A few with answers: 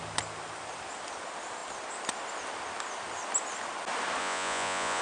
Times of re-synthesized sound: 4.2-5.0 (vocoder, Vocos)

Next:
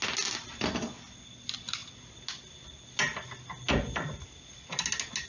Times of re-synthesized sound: none

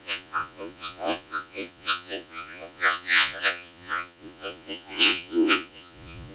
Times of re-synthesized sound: 0.0-6.3 (vocoder, Vocos)

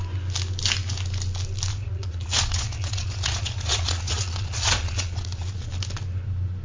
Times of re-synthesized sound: 1.7-5.7 (vocoder, Vocos)

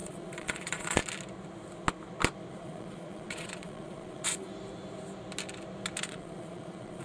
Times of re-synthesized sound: 0.0-1.0 (vocoder, Vocos); 2.5-4.5; 6.0-7.0

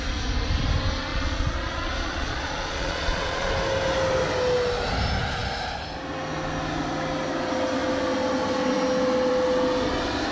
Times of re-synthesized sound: 1.1-3.5 (vocoder, Vocos)